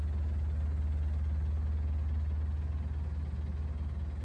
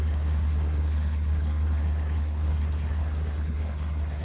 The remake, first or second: second